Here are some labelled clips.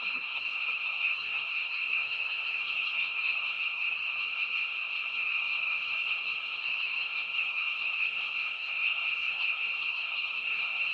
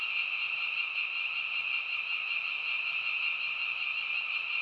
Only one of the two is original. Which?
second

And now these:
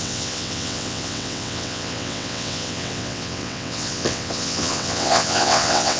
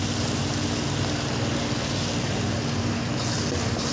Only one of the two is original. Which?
second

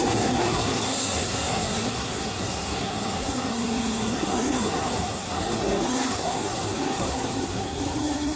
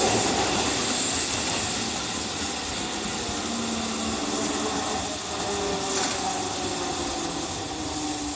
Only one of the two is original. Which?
second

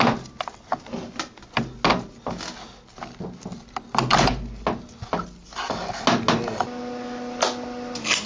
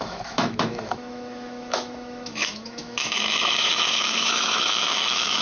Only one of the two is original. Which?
first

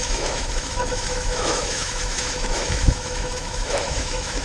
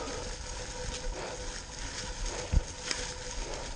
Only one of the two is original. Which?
second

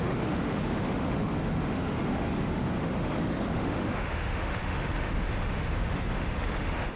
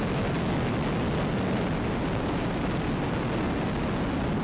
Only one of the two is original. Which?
second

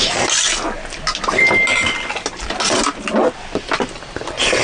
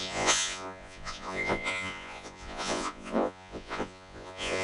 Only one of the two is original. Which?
first